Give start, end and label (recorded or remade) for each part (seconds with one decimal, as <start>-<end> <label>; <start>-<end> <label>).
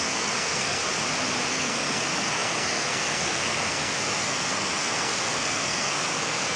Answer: 0.0-0.8 remade; 0.8-1.5 recorded; 1.5-6.6 remade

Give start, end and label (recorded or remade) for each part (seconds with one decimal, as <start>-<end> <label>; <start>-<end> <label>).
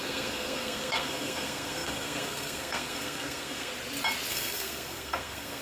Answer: 0.0-3.7 remade; 3.7-4.3 recorded; 4.3-5.6 remade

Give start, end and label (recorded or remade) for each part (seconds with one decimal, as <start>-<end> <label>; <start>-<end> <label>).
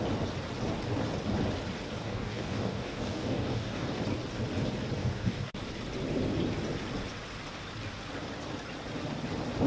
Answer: 0.0-2.0 recorded; 2.0-4.0 remade; 4.0-5.0 recorded; 5.0-5.6 remade; 5.6-9.7 recorded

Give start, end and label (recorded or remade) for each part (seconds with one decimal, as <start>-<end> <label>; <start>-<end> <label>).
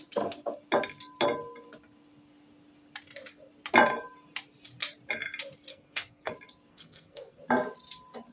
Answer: 0.0-5.7 recorded; 5.7-6.3 remade; 6.3-6.7 recorded; 6.7-7.4 remade; 7.4-8.3 recorded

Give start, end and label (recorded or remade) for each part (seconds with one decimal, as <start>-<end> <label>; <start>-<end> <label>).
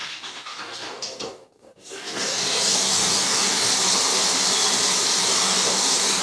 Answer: 0.0-3.7 remade; 3.7-5.2 recorded; 5.2-6.2 remade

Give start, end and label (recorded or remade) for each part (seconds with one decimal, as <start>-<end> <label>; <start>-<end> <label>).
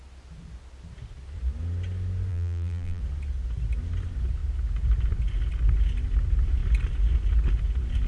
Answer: 0.0-2.3 recorded; 2.3-3.0 remade; 3.0-8.1 recorded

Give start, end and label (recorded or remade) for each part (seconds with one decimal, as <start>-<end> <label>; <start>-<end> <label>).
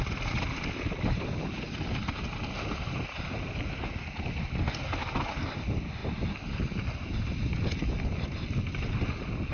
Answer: 0.0-9.5 recorded